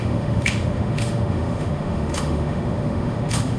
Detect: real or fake fake